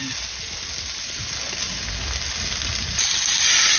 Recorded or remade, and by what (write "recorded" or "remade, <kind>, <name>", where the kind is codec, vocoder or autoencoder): recorded